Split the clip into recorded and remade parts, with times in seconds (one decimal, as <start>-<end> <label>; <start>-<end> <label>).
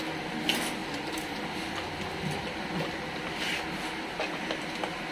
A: 0.0-5.1 recorded